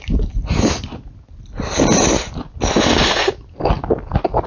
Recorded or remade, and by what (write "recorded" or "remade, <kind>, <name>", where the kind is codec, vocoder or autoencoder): recorded